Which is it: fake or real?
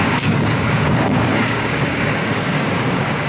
fake